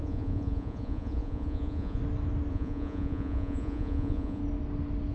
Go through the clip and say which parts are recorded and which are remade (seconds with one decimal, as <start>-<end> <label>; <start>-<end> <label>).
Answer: 0.0-2.0 remade; 2.0-2.5 recorded; 2.5-4.4 remade; 4.4-5.1 recorded